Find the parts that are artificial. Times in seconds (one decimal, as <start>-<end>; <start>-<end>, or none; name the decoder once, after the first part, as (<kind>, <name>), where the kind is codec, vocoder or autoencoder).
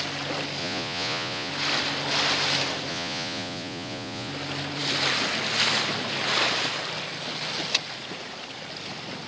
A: 0.6-1.5 (vocoder, Vocos); 2.9-4.3